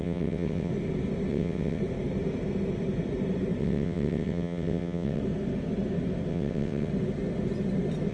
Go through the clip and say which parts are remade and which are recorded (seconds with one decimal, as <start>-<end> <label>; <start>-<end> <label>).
0.0-0.7 remade; 0.7-1.3 recorded; 1.3-1.8 remade; 1.8-3.6 recorded; 3.6-5.2 remade; 5.2-6.3 recorded; 6.3-6.9 remade; 6.9-8.1 recorded